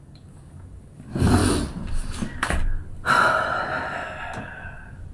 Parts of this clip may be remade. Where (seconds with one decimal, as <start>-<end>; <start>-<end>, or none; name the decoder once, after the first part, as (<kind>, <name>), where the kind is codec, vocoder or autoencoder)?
0.0-1.4 (codec, DAC); 1.9-2.6; 4.4-5.1